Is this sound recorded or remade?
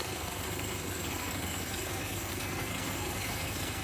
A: remade